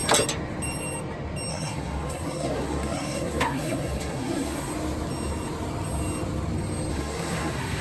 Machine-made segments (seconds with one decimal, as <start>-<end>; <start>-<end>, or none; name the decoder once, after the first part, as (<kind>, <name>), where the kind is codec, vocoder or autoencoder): 1.5-4.7 (codec, SNAC); 6.9-7.8

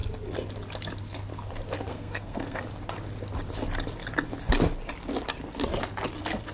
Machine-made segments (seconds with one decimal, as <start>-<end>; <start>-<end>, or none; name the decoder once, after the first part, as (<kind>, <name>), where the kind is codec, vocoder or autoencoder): 1.9-2.6 (codec, SNAC)